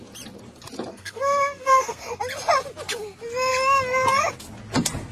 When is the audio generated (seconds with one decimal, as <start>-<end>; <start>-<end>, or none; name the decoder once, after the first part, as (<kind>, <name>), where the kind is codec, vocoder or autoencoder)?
0.9-2.2 (codec, SNAC)